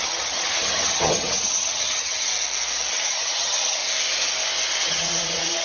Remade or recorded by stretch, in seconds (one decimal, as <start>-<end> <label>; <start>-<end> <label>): 0.0-2.3 remade; 2.3-2.9 recorded; 2.9-3.8 remade; 3.8-4.9 recorded; 4.9-5.6 remade